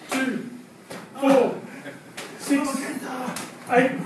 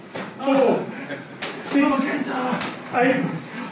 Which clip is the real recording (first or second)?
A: second